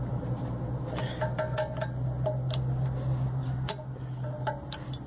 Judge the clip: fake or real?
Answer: real